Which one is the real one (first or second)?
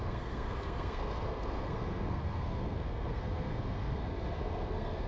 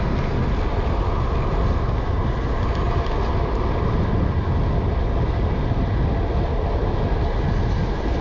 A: second